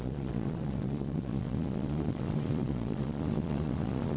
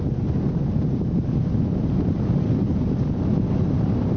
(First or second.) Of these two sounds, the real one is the second